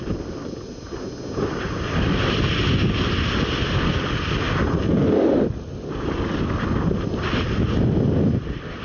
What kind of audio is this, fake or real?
real